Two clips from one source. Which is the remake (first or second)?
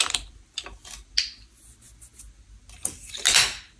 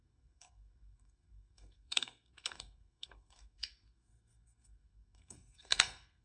second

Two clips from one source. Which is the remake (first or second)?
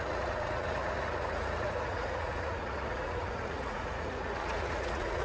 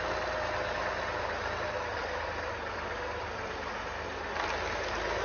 first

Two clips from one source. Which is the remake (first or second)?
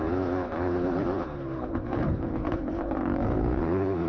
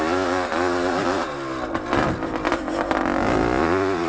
first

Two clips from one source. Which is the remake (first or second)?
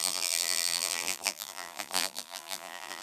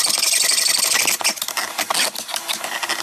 first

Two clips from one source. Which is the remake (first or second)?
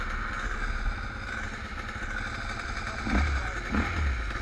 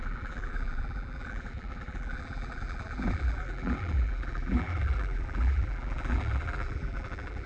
second